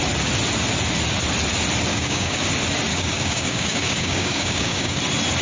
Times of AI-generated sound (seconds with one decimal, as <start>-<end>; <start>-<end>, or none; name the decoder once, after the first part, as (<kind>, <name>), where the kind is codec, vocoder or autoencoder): 1.9-2.5 (codec, DAC); 2.9-5.0